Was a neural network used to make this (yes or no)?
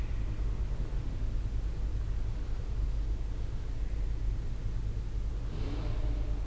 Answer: no